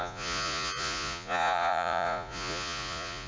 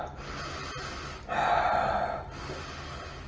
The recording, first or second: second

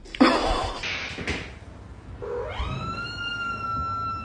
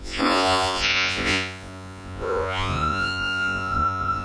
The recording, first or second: first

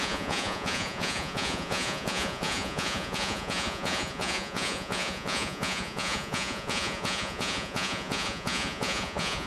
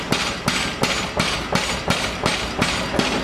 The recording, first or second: second